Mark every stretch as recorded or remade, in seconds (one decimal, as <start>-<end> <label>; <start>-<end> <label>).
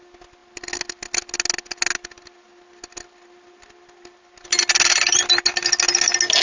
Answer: 0.0-6.4 recorded